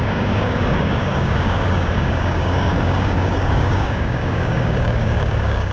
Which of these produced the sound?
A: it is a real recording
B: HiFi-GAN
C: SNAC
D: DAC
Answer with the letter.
D